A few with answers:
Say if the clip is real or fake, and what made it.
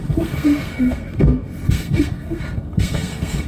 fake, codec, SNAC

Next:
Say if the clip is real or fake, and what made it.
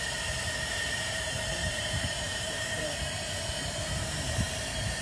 fake, vocoder, BigVGAN v2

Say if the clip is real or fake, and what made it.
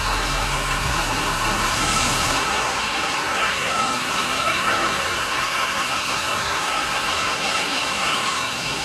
fake, codec, SNAC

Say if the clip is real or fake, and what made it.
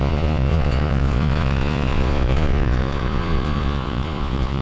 fake, vocoder, Vocos